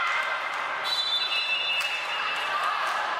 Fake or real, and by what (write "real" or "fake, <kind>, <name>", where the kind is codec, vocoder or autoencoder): fake, vocoder, BigVGAN v2